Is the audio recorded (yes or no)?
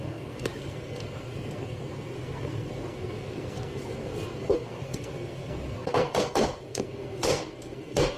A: no